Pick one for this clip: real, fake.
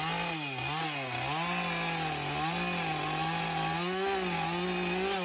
real